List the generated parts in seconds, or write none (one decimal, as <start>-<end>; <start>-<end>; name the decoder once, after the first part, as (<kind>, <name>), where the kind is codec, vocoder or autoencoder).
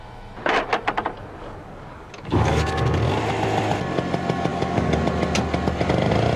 1.4-3.0 (codec, DAC); 4.5-5.0